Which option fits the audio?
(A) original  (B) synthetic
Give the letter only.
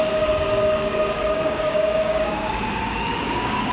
B